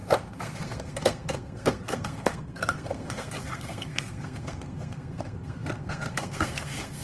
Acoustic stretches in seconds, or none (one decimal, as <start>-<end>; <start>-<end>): none